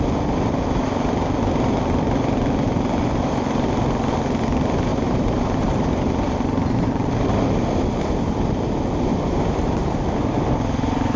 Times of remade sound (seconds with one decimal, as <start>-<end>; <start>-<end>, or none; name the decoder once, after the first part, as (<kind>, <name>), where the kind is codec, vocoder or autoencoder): 4.9-7.6 (vocoder, BigVGAN v2); 9.1-10.1